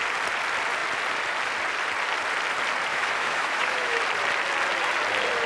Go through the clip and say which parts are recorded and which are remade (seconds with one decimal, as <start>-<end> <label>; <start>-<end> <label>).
0.0-2.9 recorded; 2.9-4.0 remade; 4.0-5.5 recorded